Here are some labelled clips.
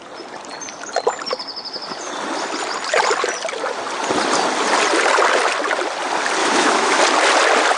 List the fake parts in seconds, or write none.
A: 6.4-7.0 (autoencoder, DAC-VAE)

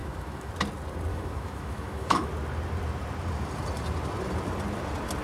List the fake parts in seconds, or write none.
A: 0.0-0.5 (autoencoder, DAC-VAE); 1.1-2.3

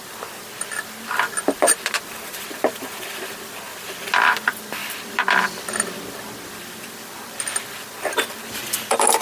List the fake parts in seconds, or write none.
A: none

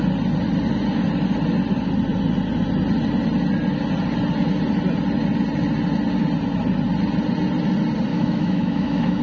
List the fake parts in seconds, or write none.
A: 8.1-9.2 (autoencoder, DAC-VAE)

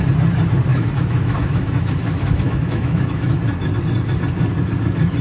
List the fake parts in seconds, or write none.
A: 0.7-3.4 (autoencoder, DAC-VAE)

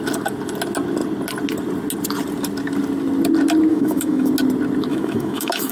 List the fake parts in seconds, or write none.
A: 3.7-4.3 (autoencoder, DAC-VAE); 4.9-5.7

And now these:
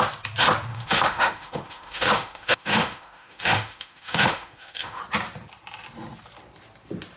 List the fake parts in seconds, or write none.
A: 0.7-5.0 (autoencoder, DAC-VAE)

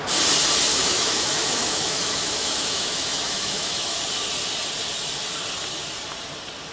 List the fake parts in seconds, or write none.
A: 0.7-4.0 (autoencoder, DAC-VAE)